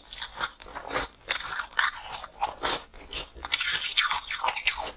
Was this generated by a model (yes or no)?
no